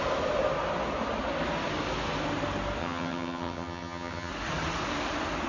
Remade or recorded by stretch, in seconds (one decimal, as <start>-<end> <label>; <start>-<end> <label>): 0.0-2.8 recorded; 2.8-4.3 remade; 4.3-5.5 recorded